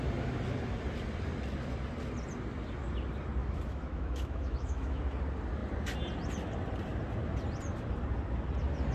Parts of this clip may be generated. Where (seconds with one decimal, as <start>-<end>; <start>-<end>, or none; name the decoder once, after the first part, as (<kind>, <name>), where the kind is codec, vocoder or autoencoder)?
3.4-5.0 (autoencoder, DAC-VAE)